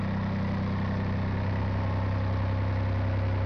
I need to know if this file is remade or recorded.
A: recorded